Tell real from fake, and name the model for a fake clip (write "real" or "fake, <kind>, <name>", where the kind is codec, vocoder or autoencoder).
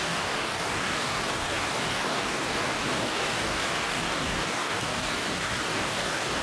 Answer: fake, codec, DAC